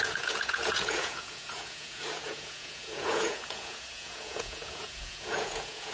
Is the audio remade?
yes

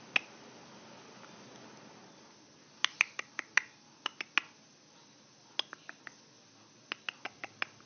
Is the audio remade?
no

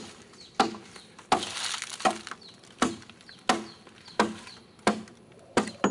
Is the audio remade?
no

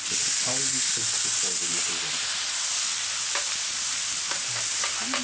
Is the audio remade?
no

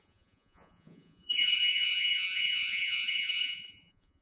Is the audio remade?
yes